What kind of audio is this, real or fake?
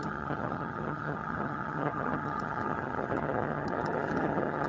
fake